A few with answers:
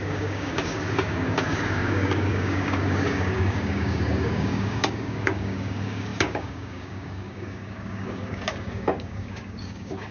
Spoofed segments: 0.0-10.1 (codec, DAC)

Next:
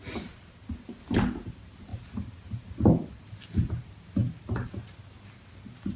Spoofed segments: none

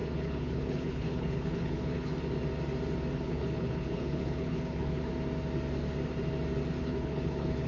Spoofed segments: 0.0-2.1 (codec, HILCodec); 3.2-5.1; 6.8-7.7

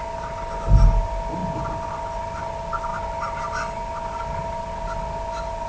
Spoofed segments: none

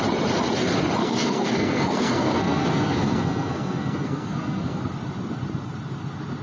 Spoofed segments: 1.0-4.8 (codec, SNAC)

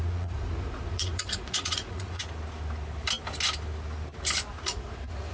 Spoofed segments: 0.0-2.2 (vocoder, Vocos); 4.5-5.3

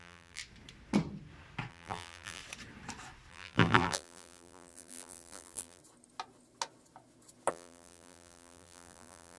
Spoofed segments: 0.0-0.4 (vocoder, BigVGAN v2); 1.7-2.4; 3.3-5.8; 7.5-9.4

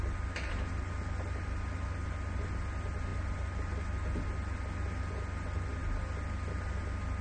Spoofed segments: none